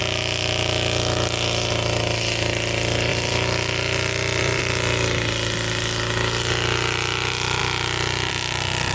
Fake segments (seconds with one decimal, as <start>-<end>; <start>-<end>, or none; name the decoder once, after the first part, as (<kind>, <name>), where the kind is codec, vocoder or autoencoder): 3.1-4.6 (vocoder, BigVGAN v2)